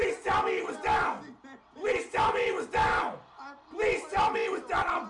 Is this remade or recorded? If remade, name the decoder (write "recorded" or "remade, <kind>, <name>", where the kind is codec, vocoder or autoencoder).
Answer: recorded